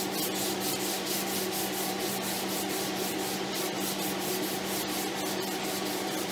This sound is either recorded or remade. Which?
recorded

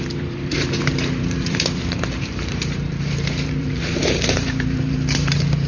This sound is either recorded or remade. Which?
remade